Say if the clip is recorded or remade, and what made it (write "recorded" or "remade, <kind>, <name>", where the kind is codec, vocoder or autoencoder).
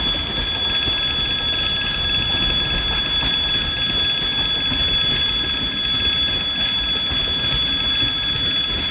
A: recorded